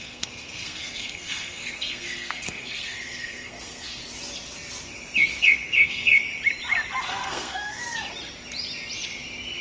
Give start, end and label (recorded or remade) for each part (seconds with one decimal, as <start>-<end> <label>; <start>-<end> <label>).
0.0-4.0 remade; 4.0-5.3 recorded; 5.3-6.2 remade; 6.2-7.1 recorded; 7.1-7.8 remade; 7.8-9.6 recorded

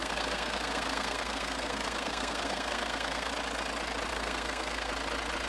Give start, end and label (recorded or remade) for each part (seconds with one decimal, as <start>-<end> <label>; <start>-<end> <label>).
0.0-3.3 remade; 3.3-4.1 recorded; 4.1-4.9 remade; 4.9-5.5 recorded

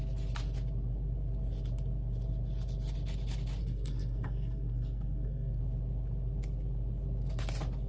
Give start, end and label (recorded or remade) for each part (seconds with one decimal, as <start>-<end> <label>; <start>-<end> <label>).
0.0-3.6 recorded; 3.6-5.6 remade; 5.6-7.9 recorded

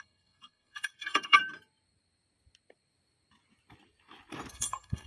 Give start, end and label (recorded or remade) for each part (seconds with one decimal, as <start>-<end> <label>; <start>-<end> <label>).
0.0-1.4 remade; 1.4-4.5 recorded; 4.5-5.1 remade

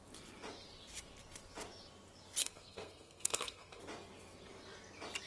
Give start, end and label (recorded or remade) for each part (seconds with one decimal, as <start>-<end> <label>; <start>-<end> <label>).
0.0-2.4 recorded; 2.4-3.8 remade; 3.8-5.3 recorded